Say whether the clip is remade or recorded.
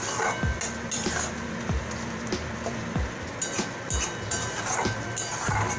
recorded